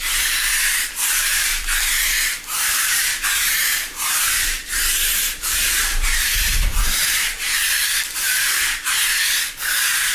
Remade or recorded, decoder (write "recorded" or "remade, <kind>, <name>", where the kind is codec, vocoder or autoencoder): remade, vocoder, BigVGAN v2